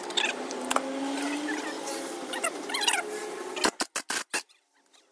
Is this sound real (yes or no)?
yes